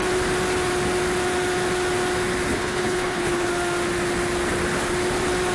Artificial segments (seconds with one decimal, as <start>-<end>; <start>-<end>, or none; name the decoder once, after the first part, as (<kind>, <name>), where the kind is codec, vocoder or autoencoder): 2.5-3.5 (codec, HILCodec)